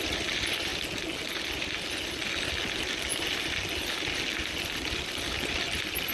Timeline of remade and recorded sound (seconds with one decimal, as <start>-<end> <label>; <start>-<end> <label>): 0.0-6.1 recorded